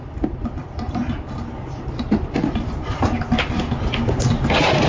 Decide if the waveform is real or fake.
real